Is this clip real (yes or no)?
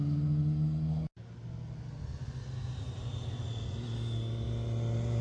yes